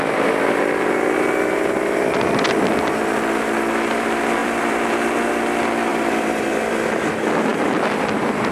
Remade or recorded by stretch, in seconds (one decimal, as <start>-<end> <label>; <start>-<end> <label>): 0.0-4.4 recorded; 4.4-4.9 remade; 4.9-5.9 recorded; 5.9-6.4 remade; 6.4-7.5 recorded; 7.5-8.5 remade